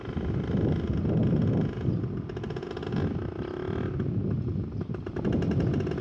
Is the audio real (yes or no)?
yes